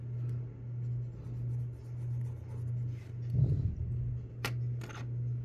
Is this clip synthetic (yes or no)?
no